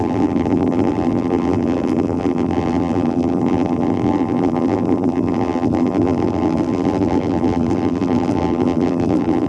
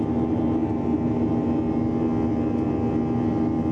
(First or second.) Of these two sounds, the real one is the second